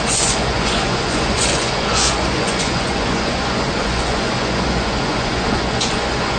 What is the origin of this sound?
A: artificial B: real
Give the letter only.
A